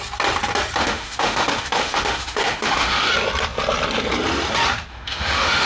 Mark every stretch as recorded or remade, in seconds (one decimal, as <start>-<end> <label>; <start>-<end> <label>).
0.0-0.8 recorded; 0.8-3.1 remade; 3.1-4.9 recorded; 4.9-5.7 remade